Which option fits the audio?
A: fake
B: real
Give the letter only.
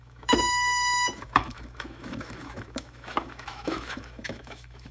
A